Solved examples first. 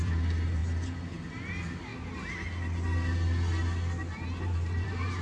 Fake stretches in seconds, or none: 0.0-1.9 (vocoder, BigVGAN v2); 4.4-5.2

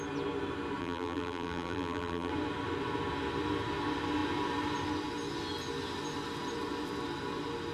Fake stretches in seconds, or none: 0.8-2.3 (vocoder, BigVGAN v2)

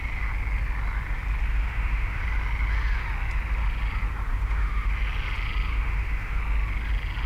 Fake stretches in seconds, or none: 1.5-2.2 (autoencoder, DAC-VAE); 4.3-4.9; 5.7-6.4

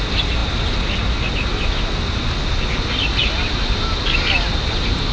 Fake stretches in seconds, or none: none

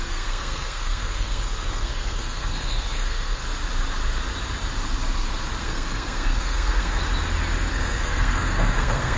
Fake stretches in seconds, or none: 0.0-3.4 (codec, SNAC); 5.6-7.0; 7.7-9.2

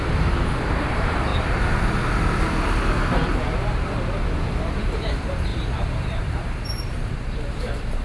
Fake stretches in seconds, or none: 0.0-1.3 (vocoder, BigVGAN v2); 4.6-8.0

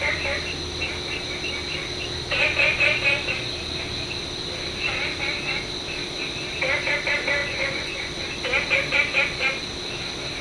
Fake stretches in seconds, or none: 7.4-8.1 (vocoder, Vocos)